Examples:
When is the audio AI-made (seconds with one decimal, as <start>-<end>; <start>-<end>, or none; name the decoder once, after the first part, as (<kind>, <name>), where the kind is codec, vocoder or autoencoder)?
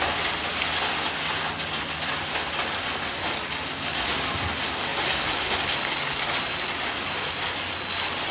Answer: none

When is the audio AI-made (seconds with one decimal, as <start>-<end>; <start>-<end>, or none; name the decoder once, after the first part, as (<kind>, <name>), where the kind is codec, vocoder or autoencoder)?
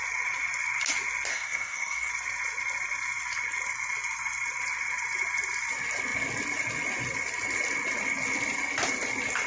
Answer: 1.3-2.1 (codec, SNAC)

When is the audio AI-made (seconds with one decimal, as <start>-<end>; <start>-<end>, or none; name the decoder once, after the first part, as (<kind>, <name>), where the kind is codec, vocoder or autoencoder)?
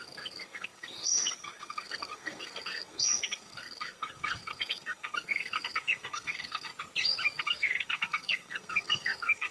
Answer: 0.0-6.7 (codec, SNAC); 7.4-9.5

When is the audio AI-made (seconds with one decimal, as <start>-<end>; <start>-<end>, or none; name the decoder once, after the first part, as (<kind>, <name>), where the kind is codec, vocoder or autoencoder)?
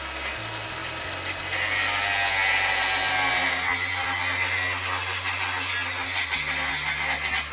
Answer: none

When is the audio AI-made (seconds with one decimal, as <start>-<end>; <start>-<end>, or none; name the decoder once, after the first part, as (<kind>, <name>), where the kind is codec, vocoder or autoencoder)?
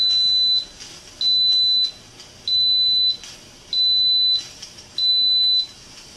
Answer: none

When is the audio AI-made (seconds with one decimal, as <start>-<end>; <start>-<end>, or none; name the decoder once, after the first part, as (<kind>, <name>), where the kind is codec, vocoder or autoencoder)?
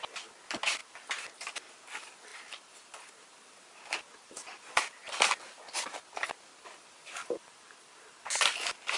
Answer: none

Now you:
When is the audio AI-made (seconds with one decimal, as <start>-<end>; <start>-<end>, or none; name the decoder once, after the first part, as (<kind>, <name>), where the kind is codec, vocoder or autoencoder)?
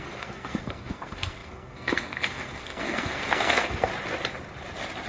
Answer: 0.0-3.9 (codec, SNAC)